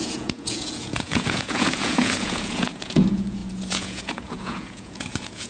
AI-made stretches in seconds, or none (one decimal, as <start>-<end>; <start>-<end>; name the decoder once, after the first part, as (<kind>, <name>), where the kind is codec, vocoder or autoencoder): 0.0-5.5 (vocoder, Vocos)